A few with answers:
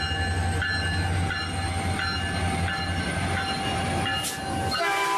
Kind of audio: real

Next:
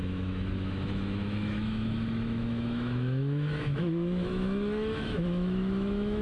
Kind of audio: fake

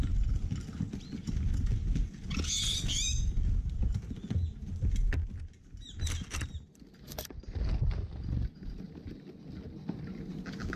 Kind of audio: real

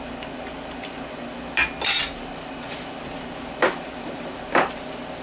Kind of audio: real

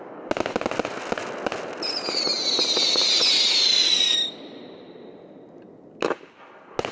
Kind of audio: real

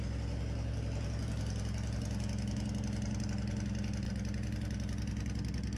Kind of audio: real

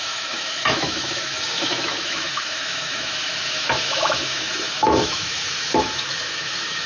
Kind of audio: fake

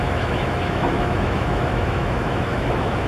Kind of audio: fake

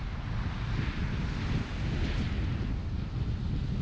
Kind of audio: real